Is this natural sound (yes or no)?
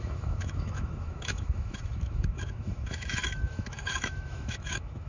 no